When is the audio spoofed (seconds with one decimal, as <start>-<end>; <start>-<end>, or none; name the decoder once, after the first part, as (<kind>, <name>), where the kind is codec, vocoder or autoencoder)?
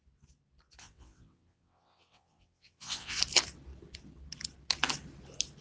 0.8-3.2 (vocoder, WaveNeXt)